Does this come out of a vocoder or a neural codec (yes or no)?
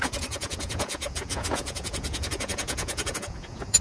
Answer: yes